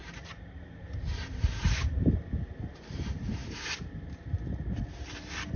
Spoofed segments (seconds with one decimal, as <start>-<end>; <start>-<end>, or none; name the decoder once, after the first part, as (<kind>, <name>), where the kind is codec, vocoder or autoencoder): 0.0-1.9 (vocoder, BigVGAN v2); 3.4-4.4